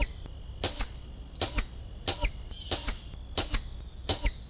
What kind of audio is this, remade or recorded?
recorded